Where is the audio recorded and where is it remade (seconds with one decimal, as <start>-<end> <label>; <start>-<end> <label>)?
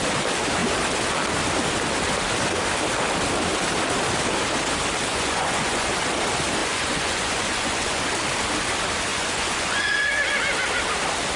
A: 0.0-5.1 recorded; 5.1-5.9 remade; 5.9-6.6 recorded; 6.6-8.0 remade; 8.0-9.1 recorded; 9.1-10.1 remade; 10.1-11.4 recorded